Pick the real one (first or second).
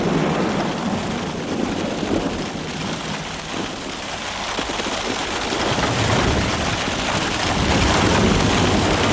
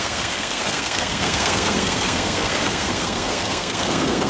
first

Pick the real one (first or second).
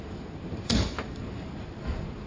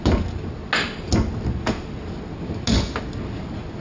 second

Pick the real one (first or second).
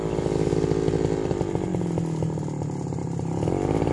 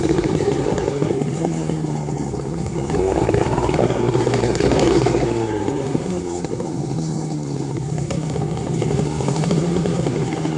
first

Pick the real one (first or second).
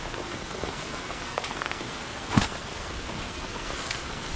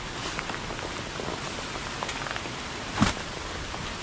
second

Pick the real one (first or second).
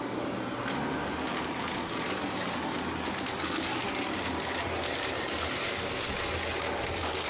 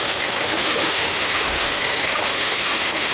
first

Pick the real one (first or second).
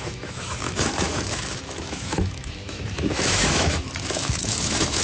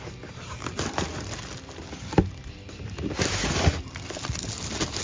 second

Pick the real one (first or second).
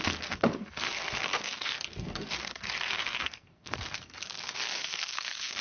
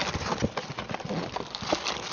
second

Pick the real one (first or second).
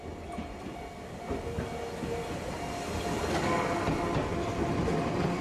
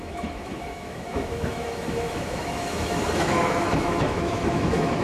first